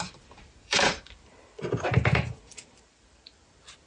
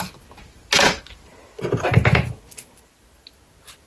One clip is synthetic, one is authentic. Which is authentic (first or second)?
second